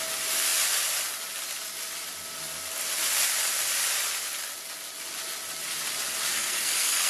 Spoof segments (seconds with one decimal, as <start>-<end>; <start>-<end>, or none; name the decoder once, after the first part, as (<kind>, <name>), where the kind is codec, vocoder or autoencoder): 6.3-7.1 (codec, SNAC)